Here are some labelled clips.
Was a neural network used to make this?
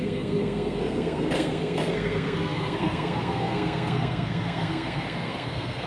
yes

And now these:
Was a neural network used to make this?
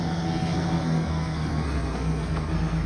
yes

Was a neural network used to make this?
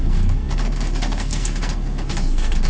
yes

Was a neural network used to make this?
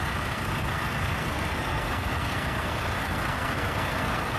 yes